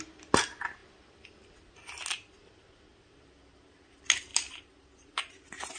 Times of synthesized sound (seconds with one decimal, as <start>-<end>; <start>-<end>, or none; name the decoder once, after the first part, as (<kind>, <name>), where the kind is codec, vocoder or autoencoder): 4.3-5.8 (vocoder, BigVGAN v2)